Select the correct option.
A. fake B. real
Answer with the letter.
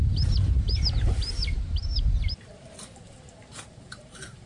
A